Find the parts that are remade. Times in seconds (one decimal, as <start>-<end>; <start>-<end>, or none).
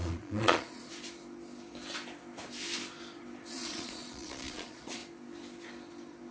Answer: 0.0-0.9; 3.5-5.0